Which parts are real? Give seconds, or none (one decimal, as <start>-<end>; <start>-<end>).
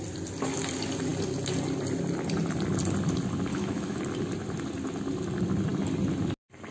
0.0-3.5; 4.0-6.7